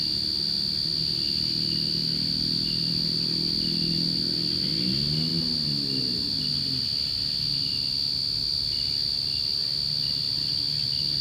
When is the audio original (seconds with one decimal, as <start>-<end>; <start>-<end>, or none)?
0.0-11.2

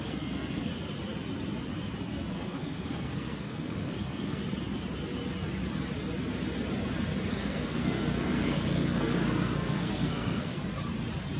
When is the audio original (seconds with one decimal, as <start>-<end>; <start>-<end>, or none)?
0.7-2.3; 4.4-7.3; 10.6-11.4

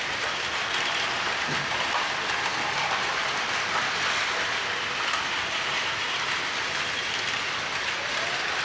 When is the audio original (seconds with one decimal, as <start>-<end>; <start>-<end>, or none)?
0.0-8.6

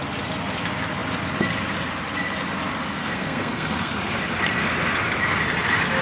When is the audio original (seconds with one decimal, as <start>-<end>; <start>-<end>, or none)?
0.0-3.0; 3.9-6.0